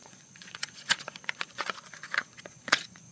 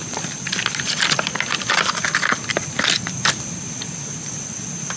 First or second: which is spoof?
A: first